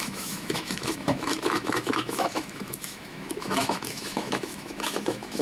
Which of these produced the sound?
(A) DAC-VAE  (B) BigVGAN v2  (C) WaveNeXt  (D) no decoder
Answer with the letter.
A